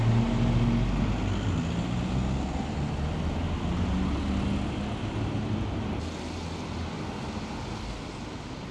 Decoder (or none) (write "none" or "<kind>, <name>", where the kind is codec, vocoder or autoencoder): none